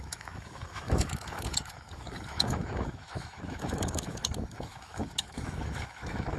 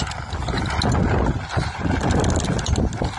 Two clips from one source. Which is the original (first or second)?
second